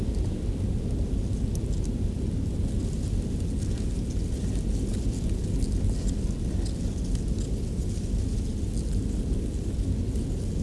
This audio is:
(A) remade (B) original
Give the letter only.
B